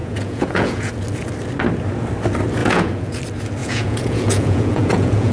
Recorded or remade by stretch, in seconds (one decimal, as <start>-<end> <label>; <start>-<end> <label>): 0.0-0.9 remade; 0.9-2.6 recorded; 2.6-3.2 remade; 3.2-3.6 recorded; 3.6-5.3 remade